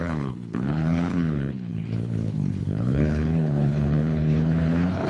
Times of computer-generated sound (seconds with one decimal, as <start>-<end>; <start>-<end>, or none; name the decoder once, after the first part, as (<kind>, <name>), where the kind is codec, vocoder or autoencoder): 0.0-5.1 (codec, HILCodec)